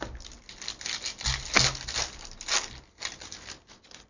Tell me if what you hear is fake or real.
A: real